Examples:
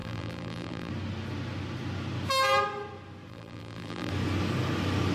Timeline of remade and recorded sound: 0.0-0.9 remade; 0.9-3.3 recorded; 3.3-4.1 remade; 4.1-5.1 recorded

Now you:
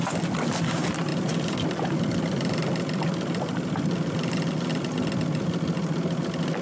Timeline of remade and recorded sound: 0.0-6.6 recorded

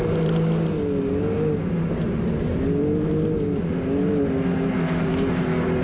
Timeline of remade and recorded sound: 0.0-5.8 recorded

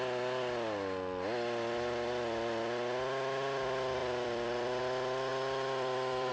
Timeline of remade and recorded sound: 0.0-4.0 recorded; 4.0-4.8 remade; 4.8-5.3 recorded; 5.3-6.3 remade

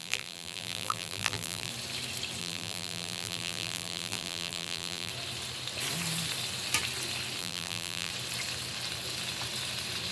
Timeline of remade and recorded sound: 0.0-1.7 remade; 1.7-2.4 recorded; 2.4-5.1 remade; 5.1-7.4 recorded; 7.4-8.1 remade; 8.1-10.1 recorded

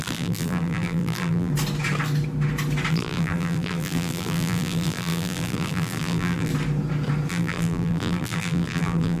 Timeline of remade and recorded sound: 0.0-1.5 remade; 1.5-2.9 recorded; 2.9-6.5 remade; 6.5-7.3 recorded; 7.3-9.2 remade

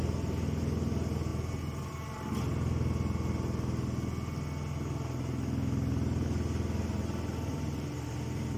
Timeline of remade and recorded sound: 0.0-1.3 recorded; 1.3-2.3 remade; 2.3-7.5 recorded; 7.5-8.6 remade

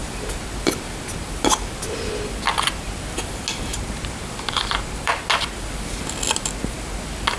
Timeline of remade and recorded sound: 0.0-3.7 recorded; 3.7-5.1 remade; 5.1-7.4 recorded